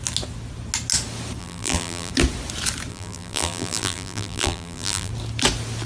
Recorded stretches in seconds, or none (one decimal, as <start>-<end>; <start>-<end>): 0.0-1.4; 2.1-2.9; 5.1-5.9